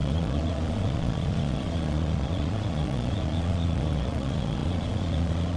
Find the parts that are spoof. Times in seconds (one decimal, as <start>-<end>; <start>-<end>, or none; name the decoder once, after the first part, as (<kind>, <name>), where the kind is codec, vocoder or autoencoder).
0.0-5.6 (vocoder, Vocos)